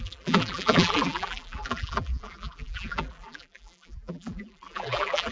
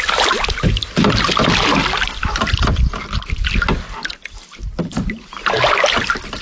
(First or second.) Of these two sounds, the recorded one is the second